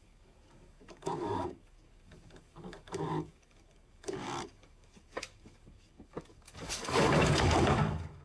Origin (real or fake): fake